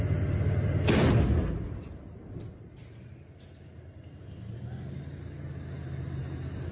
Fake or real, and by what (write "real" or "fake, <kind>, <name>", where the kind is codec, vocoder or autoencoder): real